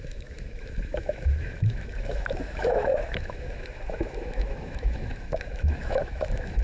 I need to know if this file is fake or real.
fake